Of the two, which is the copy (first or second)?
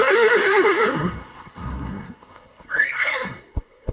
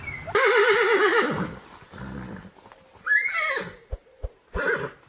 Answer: first